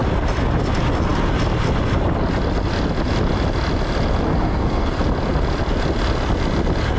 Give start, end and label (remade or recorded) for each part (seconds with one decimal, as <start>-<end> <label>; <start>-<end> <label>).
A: 0.0-4.3 recorded; 4.3-5.0 remade; 5.0-7.0 recorded